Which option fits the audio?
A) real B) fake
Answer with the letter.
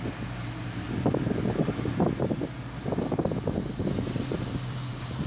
A